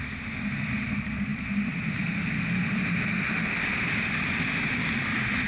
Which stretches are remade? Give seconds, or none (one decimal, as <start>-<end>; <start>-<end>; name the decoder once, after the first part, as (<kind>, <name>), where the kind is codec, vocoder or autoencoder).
none